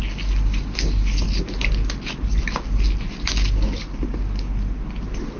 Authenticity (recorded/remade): recorded